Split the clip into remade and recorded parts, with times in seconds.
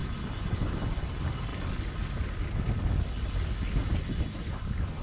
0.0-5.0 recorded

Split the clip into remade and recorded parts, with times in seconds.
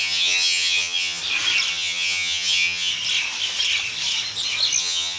0.0-1.2 remade; 1.2-1.7 recorded; 1.7-2.9 remade; 2.9-4.8 recorded; 4.8-5.2 remade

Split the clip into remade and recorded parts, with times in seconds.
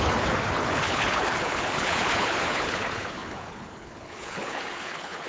0.0-5.3 remade